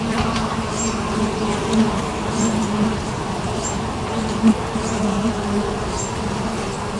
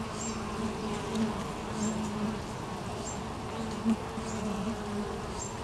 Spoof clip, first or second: first